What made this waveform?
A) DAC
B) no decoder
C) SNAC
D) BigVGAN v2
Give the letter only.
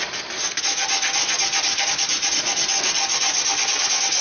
B